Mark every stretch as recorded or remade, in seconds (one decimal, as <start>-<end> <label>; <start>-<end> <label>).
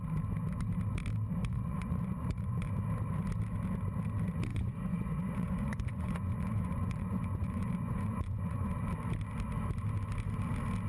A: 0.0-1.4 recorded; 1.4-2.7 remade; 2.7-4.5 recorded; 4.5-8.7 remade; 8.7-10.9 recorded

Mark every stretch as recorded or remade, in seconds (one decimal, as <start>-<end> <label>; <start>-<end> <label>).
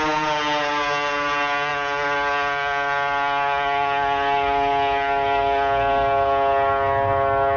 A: 0.0-7.6 recorded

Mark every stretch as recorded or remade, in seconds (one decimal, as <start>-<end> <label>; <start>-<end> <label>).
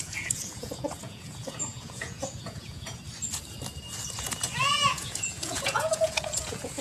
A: 0.0-3.0 remade; 3.0-4.2 recorded; 4.2-6.8 remade